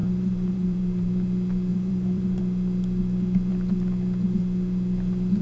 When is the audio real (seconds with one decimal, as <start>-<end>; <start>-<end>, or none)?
1.1-1.7; 2.4-5.4